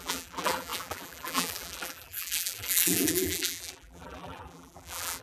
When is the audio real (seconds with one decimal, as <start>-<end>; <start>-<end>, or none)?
none